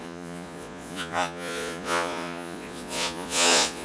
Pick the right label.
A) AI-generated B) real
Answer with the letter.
A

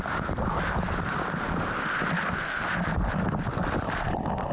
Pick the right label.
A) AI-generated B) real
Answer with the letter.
B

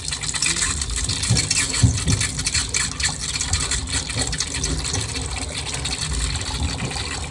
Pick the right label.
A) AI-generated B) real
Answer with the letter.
B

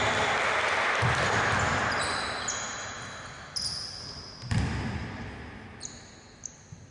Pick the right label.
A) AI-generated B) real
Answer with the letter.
B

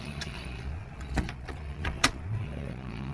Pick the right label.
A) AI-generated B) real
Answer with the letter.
A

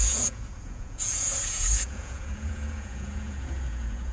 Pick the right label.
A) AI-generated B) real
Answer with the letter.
A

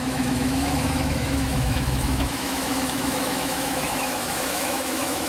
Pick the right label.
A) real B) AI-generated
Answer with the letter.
B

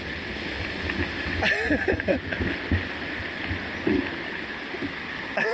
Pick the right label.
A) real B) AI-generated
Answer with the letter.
A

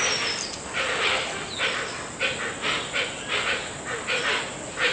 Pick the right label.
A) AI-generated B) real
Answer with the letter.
B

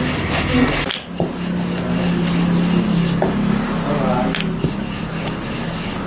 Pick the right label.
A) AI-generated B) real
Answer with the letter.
B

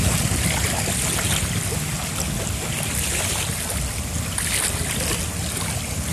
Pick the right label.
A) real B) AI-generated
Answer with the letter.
A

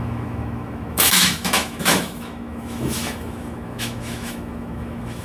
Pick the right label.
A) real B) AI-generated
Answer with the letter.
B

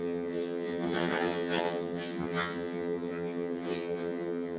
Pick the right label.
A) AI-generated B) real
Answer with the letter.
A